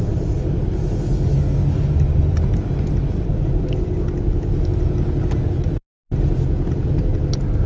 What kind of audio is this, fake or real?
real